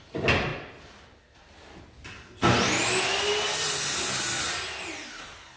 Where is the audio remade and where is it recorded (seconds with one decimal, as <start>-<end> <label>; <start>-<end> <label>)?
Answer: 0.0-5.6 recorded